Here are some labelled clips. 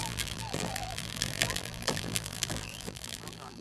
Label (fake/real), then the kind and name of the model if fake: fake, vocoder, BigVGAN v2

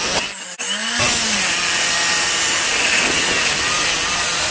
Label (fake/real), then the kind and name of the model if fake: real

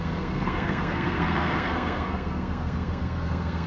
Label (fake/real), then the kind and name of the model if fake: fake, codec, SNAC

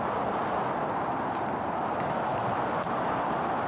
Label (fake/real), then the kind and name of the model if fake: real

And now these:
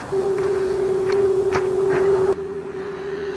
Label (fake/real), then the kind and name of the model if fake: fake, vocoder, Vocos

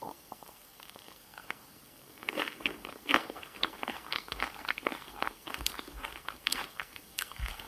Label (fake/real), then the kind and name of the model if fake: fake, codec, SNAC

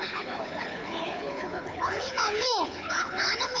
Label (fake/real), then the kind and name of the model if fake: fake, codec, HILCodec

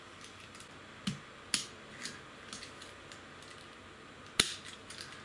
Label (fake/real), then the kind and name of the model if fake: real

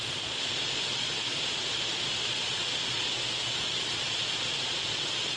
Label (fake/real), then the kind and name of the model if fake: fake, vocoder, Vocos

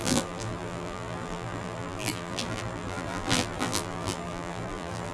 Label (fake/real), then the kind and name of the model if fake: fake, vocoder, BigVGAN v2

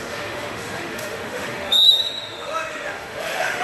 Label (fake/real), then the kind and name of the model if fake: fake, autoencoder, DAC-VAE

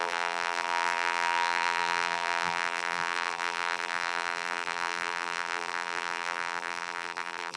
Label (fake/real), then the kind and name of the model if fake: fake, vocoder, BigVGAN v2